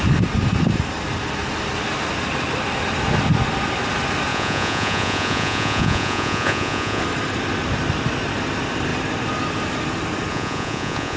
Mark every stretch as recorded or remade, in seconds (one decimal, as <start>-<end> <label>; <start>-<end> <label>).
0.0-4.3 recorded; 4.3-7.0 remade; 7.0-10.3 recorded; 10.3-11.2 remade

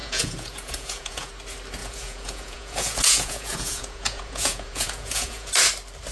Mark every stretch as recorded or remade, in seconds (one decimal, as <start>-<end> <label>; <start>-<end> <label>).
0.0-1.3 remade; 1.3-1.8 recorded; 1.8-5.5 remade; 5.5-6.1 recorded

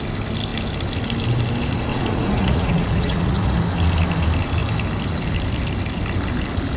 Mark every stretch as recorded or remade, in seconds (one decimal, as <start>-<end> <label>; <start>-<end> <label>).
0.0-1.9 recorded; 1.9-3.6 remade; 3.6-6.8 recorded

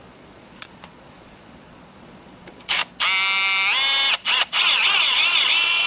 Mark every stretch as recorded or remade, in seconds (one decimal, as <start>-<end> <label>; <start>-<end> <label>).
0.0-2.8 remade; 2.8-4.1 recorded; 4.1-5.9 remade

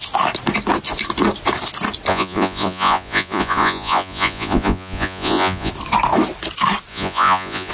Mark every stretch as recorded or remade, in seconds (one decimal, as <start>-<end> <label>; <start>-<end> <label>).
0.0-2.1 recorded; 2.1-5.7 remade; 5.7-6.9 recorded; 6.9-7.7 remade

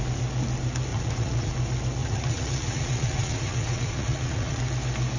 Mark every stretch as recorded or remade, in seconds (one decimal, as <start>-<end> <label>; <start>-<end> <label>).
0.0-0.9 recorded; 0.9-1.5 remade; 1.5-2.0 recorded; 2.0-4.6 remade; 4.6-5.2 recorded

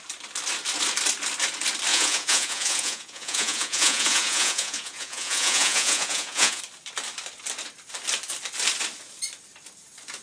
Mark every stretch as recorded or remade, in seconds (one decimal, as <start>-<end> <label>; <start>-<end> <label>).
0.0-1.9 recorded; 1.9-6.6 remade; 6.6-10.2 recorded